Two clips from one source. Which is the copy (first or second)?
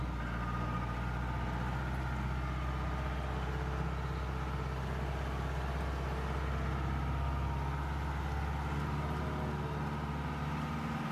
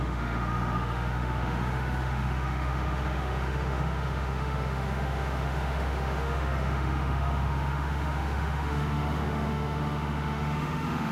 second